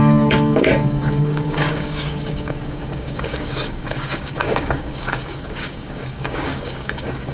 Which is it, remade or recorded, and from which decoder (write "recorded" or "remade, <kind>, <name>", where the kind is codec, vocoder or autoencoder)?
remade, codec, DAC